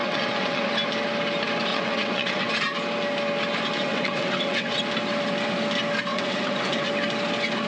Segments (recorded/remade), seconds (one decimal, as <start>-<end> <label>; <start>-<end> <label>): 0.0-0.7 remade; 0.7-1.7 recorded; 1.7-2.5 remade; 2.5-3.8 recorded; 3.8-4.8 remade; 4.8-6.1 recorded; 6.1-6.9 remade; 6.9-7.7 recorded